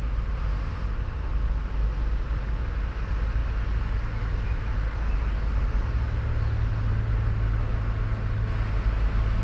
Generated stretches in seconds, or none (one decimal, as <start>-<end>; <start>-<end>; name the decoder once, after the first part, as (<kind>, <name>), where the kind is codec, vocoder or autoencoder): none